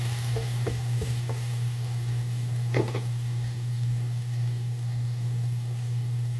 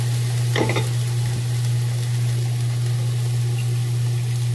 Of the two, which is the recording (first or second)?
second